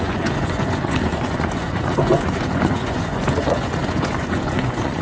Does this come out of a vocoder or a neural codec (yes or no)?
yes